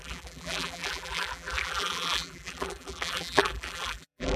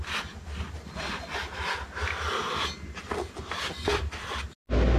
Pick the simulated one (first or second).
first